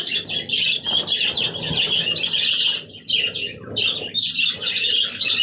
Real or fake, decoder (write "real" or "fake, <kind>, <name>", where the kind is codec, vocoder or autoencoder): real